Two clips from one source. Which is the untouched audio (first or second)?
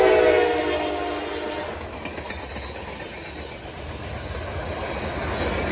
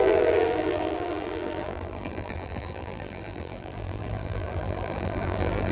first